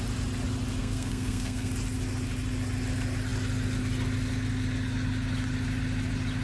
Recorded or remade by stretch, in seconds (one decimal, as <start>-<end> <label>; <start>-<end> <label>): 0.0-0.8 recorded; 0.8-1.7 remade; 1.7-6.4 recorded